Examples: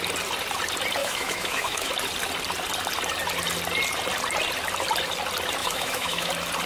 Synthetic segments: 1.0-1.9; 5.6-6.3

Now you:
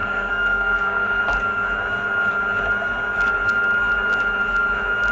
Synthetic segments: 0.0-1.2

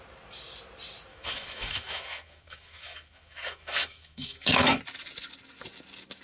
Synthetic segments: 1.1-4.8

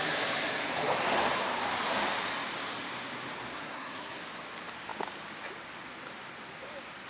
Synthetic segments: 3.6-4.2